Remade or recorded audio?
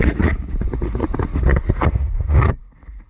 remade